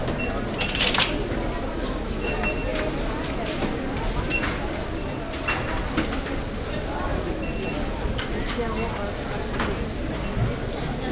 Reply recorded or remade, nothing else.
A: recorded